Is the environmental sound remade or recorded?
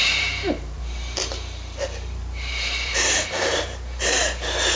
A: remade